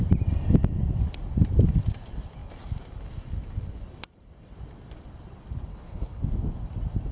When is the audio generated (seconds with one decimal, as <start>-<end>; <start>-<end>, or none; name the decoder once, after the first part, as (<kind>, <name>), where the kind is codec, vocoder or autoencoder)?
5.7-6.2 (codec, HILCodec)